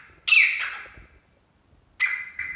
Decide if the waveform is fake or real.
real